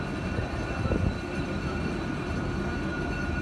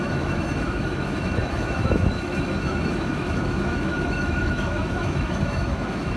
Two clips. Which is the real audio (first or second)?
first